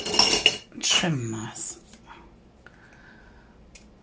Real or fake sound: real